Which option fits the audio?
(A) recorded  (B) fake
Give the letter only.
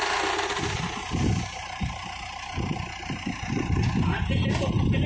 A